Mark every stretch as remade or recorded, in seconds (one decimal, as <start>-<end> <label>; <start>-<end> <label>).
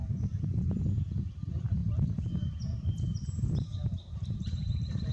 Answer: 0.0-0.8 remade; 0.8-1.8 recorded; 1.8-5.1 remade